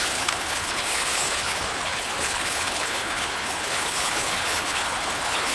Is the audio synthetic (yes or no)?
yes